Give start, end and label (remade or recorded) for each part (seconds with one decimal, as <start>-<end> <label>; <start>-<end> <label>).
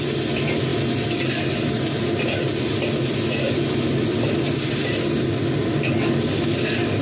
0.0-7.0 recorded